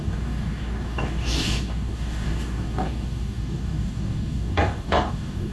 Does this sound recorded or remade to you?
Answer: remade